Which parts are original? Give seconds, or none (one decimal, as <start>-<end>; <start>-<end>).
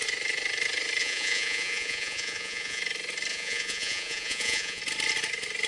0.0-1.0; 2.8-3.3; 4.8-5.7